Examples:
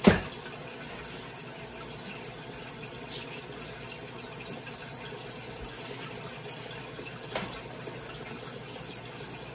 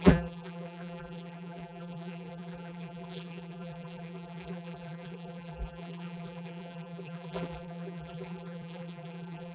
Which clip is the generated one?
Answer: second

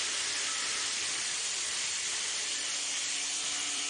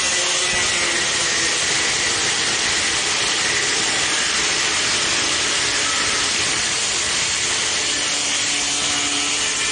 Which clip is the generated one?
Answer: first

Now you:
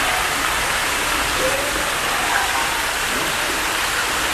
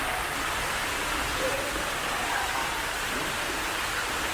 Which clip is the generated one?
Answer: second